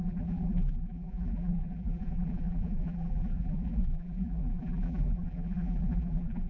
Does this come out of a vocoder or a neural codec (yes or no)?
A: yes